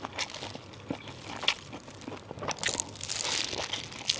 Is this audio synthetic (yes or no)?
no